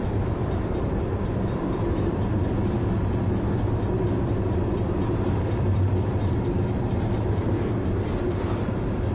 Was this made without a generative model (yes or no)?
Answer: no